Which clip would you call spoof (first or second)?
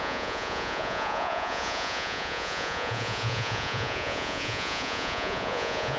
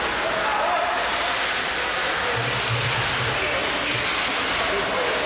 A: first